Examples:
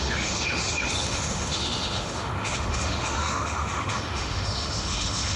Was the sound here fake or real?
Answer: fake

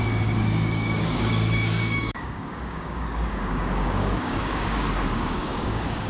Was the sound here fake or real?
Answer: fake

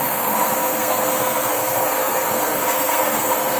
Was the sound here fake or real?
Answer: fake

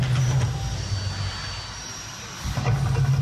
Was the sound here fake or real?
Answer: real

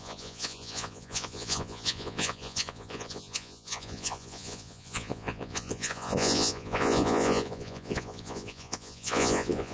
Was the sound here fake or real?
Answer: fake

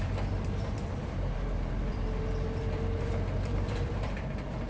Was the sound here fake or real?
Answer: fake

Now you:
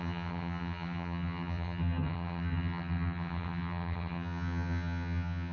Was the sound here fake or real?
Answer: fake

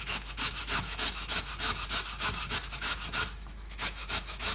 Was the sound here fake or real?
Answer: fake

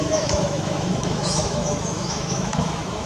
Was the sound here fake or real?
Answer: fake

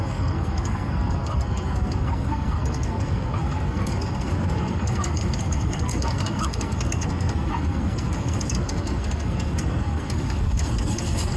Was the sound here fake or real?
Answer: fake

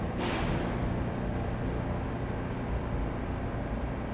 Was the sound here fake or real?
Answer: real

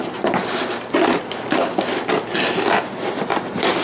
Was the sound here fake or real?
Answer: real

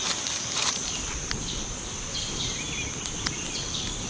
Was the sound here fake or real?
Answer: real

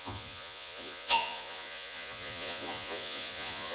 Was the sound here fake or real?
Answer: fake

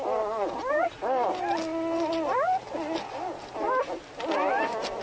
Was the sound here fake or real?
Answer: real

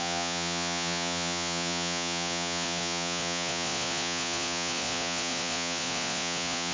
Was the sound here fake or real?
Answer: fake